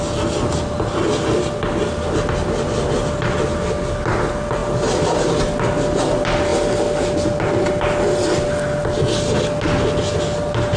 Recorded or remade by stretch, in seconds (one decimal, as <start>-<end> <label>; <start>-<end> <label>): 0.0-10.8 recorded